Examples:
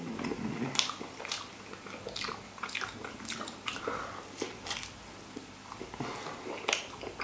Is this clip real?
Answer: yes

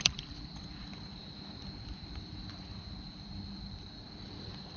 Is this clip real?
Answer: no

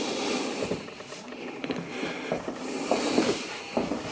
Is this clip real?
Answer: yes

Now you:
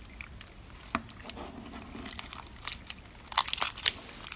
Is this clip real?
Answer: yes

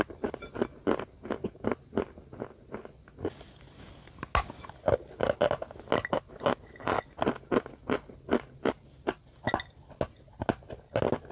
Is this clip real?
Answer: yes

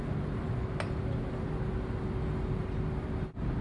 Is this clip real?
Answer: yes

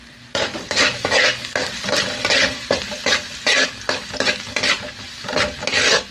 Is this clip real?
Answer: yes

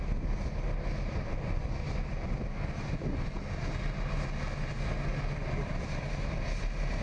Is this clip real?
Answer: yes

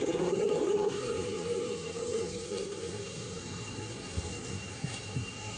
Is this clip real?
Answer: no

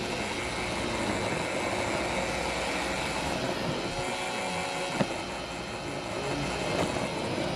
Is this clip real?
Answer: yes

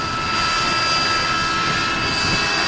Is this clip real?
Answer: yes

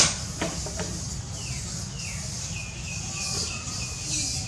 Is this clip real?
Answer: yes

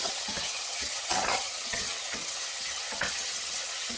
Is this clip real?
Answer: no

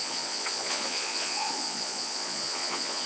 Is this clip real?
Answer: no